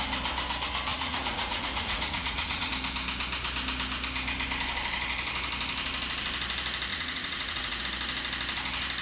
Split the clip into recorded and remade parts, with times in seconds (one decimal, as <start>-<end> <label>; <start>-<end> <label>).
0.0-0.9 recorded; 0.9-2.7 remade; 2.7-6.9 recorded; 6.9-7.8 remade; 7.8-9.0 recorded